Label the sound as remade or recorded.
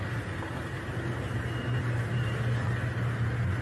recorded